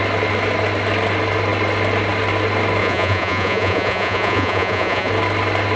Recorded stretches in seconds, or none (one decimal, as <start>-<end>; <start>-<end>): 0.0-2.8; 5.1-5.8

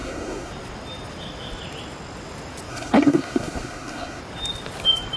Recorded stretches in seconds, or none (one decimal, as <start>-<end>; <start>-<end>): 0.5-2.7; 4.2-5.2